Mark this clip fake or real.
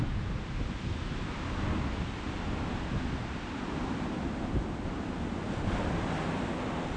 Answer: real